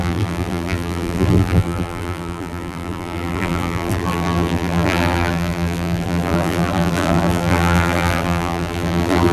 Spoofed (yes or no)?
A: yes